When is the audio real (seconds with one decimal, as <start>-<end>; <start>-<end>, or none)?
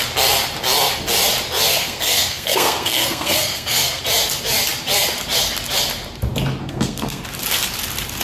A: 0.0-1.7; 4.0-6.6; 7.2-8.2